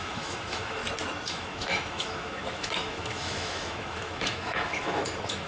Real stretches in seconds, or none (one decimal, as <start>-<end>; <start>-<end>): 0.8-1.3

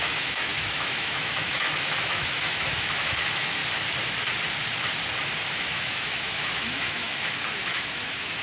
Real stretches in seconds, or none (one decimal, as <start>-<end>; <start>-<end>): 3.6-5.5

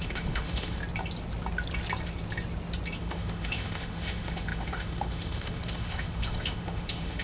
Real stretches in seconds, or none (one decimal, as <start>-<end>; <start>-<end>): 0.8-3.0

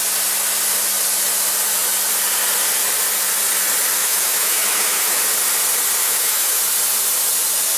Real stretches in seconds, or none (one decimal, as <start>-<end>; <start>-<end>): 0.0-4.0; 5.2-6.0; 6.6-7.8